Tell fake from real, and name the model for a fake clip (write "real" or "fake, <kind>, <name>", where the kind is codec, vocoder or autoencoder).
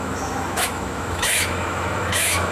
fake, autoencoder, DAC-VAE